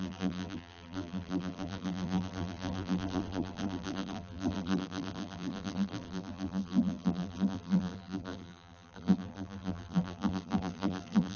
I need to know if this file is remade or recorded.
remade